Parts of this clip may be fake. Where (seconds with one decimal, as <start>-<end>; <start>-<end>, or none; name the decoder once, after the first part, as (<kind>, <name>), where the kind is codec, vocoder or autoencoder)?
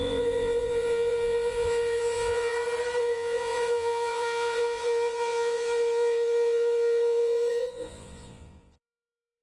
0.0-2.5 (vocoder, Vocos); 3.0-9.4